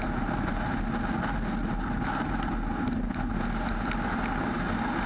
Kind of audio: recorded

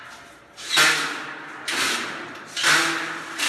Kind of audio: recorded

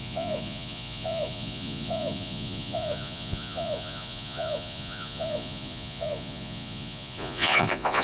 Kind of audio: remade